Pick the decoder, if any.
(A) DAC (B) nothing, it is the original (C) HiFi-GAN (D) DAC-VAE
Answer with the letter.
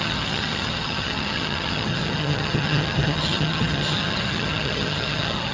C